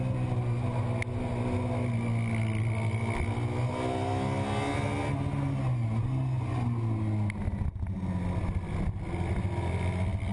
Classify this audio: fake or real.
real